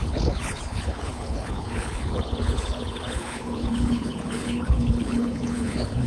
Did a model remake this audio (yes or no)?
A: yes